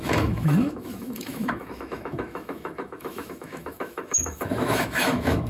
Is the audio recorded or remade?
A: remade